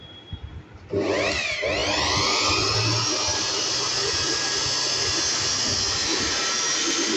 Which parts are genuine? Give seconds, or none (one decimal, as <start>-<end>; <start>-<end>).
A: 0.0-7.2